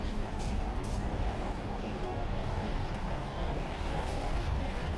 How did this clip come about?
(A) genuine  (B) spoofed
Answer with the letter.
B